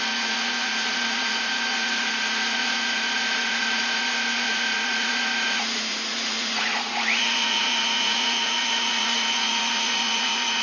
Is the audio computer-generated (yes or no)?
yes